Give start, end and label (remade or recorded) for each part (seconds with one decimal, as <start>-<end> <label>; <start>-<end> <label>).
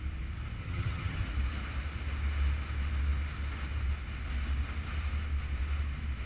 0.0-0.6 recorded; 0.6-1.3 remade; 1.3-6.3 recorded